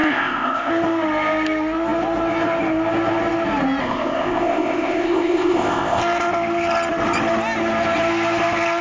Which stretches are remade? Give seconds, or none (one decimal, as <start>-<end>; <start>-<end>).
0.0-0.7; 3.8-6.0